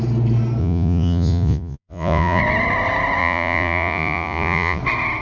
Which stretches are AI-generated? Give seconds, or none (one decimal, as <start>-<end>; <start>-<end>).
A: 0.6-2.4; 3.2-4.8